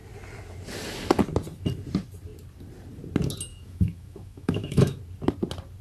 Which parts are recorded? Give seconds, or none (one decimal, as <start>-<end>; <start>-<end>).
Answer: 0.0-3.5; 5.0-5.8